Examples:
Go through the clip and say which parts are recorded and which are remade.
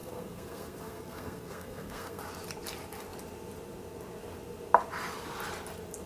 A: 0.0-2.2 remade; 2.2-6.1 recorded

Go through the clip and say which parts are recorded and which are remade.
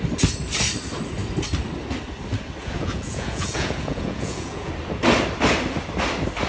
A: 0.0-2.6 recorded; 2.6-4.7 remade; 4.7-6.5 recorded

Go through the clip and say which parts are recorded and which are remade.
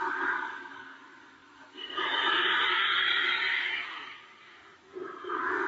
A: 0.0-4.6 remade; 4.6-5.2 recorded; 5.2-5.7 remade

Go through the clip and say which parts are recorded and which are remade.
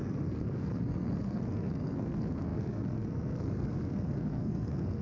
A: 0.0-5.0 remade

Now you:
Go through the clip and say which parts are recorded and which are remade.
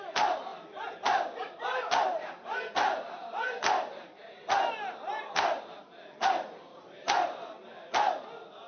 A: 0.0-8.7 recorded